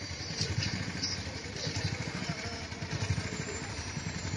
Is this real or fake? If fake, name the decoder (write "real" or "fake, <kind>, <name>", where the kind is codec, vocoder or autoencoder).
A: fake, vocoder, BigVGAN v2